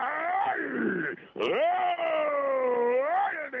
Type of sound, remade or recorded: recorded